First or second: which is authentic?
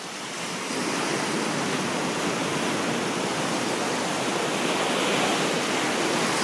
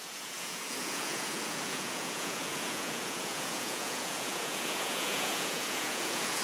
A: first